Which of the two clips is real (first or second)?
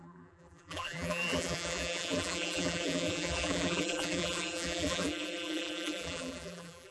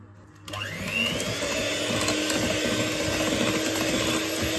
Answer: second